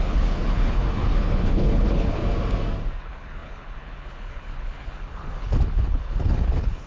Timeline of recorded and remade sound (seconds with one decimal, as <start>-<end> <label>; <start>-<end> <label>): 0.0-2.2 remade; 2.2-3.0 recorded; 3.0-6.9 remade